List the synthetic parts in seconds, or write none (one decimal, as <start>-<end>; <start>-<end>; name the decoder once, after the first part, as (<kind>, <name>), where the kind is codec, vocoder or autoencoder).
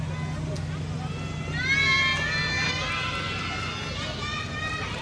none